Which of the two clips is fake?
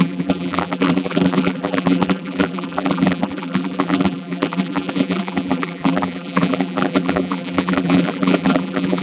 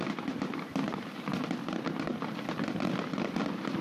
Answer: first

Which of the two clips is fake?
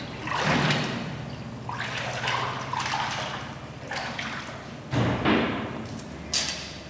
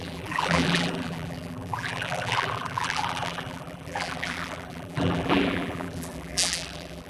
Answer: second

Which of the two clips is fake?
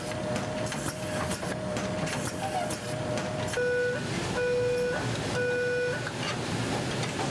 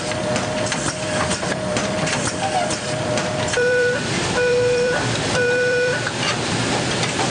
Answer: second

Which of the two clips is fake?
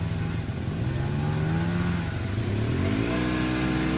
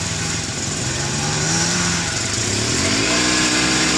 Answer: second